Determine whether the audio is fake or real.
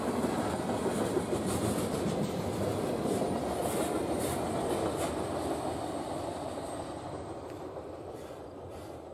real